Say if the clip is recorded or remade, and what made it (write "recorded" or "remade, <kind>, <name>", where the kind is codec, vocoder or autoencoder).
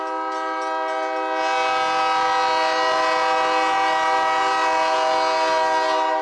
recorded